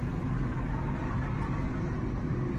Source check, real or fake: real